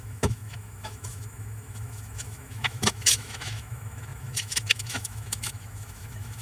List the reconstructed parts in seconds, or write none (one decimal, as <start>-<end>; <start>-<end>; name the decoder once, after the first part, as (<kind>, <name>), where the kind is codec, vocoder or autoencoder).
0.0-6.4 (autoencoder, DAC-VAE)